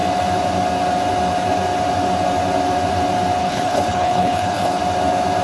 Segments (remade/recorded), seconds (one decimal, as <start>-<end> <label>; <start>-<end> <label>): 0.0-3.4 recorded; 3.4-4.8 remade; 4.8-5.4 recorded